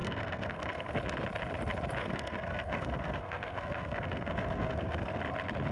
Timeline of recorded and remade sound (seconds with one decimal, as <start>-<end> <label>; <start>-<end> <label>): 0.0-1.0 remade; 1.0-2.0 recorded; 2.0-5.2 remade; 5.2-5.7 recorded